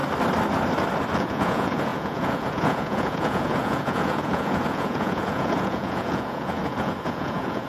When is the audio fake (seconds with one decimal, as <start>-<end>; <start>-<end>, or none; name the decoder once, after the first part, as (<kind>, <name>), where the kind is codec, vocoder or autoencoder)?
1.1-7.7 (vocoder, Vocos)